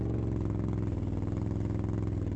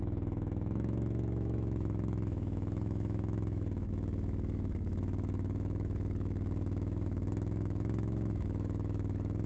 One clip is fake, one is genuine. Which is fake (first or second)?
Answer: second